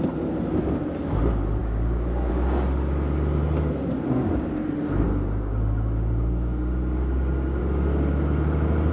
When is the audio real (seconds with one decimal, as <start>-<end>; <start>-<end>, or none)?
0.0-1.6; 2.3-5.1; 7.6-8.9